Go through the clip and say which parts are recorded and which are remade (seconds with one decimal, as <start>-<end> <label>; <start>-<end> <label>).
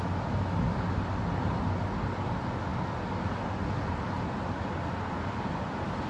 0.0-6.1 recorded